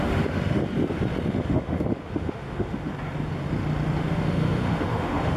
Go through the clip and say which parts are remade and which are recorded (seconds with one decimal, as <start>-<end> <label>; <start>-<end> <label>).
0.0-0.6 remade; 0.6-1.3 recorded; 1.3-2.9 remade; 2.9-4.0 recorded; 4.0-5.4 remade